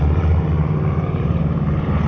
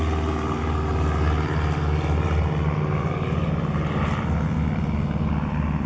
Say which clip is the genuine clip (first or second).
second